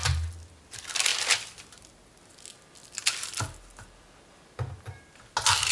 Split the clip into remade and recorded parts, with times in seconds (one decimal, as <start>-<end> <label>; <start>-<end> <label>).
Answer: 0.0-1.1 recorded; 1.1-1.9 remade; 1.9-5.7 recorded